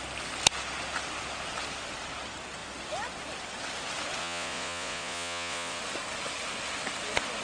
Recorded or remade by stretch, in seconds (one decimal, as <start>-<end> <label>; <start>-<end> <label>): 0.0-4.2 recorded; 4.2-5.8 remade; 5.8-7.4 recorded